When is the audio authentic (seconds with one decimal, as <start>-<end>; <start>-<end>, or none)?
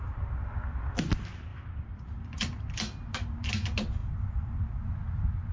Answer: 0.0-1.5; 3.5-4.0; 4.8-5.5